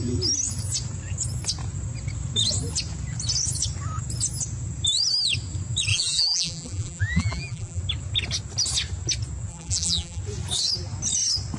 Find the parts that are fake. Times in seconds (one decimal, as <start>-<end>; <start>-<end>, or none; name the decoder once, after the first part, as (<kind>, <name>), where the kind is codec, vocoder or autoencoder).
5.9-7.8 (vocoder, BigVGAN v2); 9.5-10.2